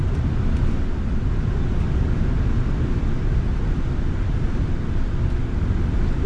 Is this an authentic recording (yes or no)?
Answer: yes